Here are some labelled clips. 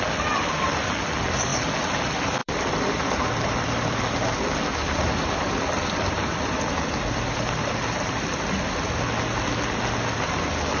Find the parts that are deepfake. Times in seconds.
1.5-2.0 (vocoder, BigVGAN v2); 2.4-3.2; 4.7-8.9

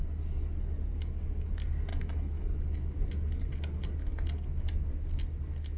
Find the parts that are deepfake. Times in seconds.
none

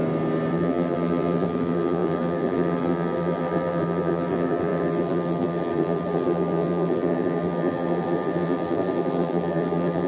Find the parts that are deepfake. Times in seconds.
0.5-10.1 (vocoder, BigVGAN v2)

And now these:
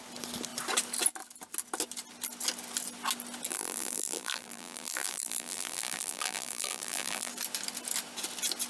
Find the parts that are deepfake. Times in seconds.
3.5-7.3 (vocoder, BigVGAN v2)